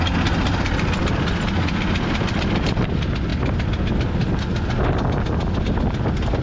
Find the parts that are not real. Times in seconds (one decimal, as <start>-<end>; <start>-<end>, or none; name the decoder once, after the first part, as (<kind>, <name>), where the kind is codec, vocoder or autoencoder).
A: none